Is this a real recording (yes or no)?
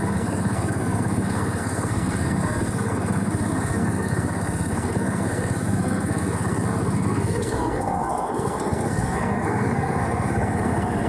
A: no